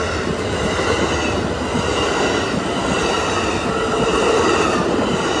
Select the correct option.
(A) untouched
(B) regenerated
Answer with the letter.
A